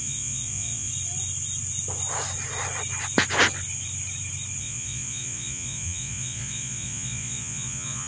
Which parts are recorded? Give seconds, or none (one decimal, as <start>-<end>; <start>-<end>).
0.9-4.6